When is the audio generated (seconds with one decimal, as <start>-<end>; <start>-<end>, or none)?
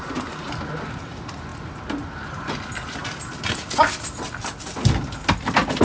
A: none